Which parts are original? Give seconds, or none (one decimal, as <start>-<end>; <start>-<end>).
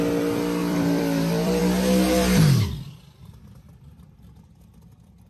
0.0-0.6; 1.6-5.3